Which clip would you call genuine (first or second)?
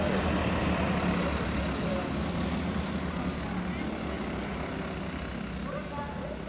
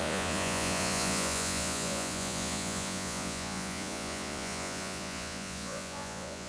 first